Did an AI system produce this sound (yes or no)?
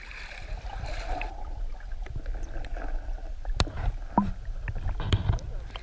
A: no